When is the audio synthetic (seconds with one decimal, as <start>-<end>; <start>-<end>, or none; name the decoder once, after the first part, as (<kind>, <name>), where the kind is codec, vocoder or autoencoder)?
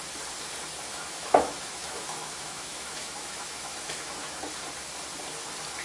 0.9-4.4 (autoencoder, DAC-VAE)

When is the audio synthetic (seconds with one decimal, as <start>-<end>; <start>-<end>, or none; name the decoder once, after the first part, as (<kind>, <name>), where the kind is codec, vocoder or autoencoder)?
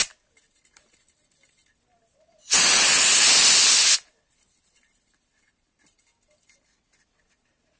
none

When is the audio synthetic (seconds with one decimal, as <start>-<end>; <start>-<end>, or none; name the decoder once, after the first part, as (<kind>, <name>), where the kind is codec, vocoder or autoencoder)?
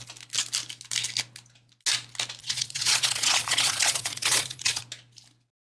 2.4-4.8 (vocoder, Vocos)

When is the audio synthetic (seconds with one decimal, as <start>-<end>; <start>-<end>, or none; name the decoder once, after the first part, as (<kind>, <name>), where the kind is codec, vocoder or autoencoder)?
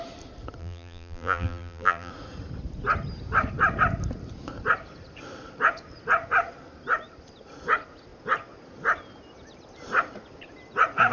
0.6-2.1 (vocoder, BigVGAN v2)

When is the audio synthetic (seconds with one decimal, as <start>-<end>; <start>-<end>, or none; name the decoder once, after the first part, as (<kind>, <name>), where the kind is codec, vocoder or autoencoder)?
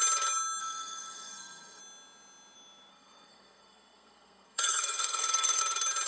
0.6-1.8 (codec, SNAC); 2.9-5.6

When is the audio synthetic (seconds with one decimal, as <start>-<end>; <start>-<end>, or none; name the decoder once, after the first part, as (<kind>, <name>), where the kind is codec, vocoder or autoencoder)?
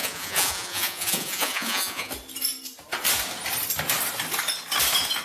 0.0-2.1 (vocoder, Vocos)